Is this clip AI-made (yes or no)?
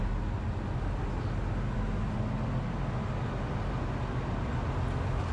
no